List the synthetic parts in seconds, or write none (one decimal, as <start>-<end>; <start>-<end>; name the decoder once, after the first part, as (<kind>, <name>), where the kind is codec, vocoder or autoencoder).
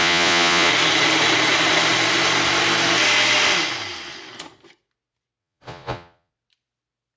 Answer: 0.0-0.7 (vocoder, Vocos); 5.4-6.3